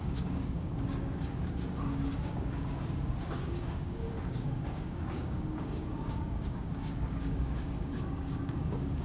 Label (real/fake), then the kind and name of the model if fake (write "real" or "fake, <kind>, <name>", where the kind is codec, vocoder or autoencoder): fake, codec, DAC